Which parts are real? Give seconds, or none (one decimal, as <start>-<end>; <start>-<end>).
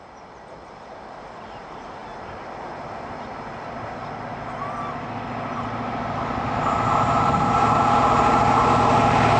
0.0-9.4